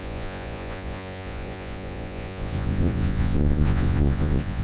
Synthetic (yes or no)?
yes